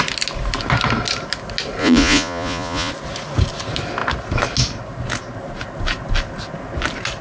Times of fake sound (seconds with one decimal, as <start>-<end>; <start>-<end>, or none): 1.8-2.9